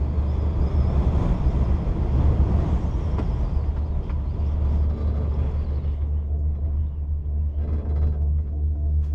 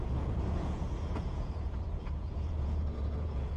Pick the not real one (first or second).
second